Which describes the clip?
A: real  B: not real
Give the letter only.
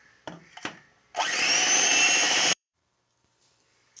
B